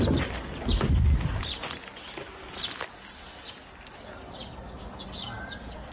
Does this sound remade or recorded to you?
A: recorded